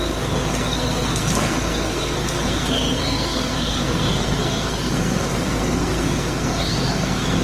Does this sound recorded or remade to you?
remade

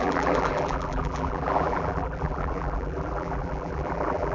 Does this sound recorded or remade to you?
remade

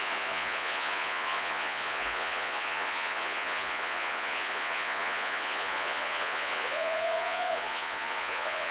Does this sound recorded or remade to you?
remade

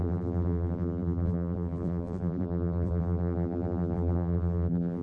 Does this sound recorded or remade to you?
remade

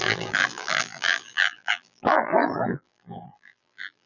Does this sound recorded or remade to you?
remade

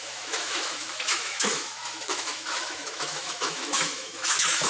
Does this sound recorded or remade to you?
remade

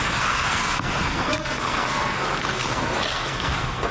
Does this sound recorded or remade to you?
remade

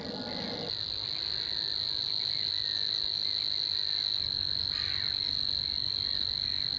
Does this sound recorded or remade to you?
recorded